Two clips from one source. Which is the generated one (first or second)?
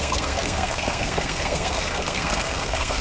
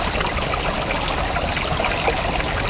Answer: first